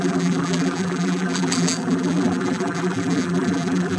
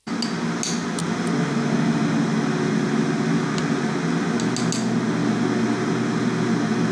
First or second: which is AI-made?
first